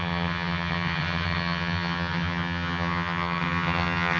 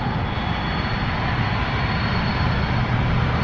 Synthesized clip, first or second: first